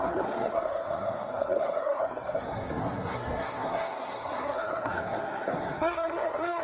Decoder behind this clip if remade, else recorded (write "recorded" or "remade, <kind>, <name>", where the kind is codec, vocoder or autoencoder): remade, codec, SNAC